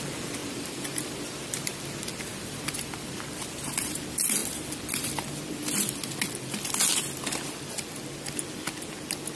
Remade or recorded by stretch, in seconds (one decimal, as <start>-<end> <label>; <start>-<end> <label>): 0.0-0.4 recorded; 0.4-1.8 remade; 1.8-2.3 recorded; 2.3-3.8 remade; 3.8-9.4 recorded